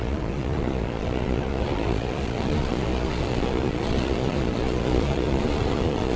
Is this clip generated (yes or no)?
yes